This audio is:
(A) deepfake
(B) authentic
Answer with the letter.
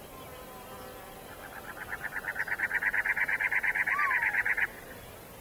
B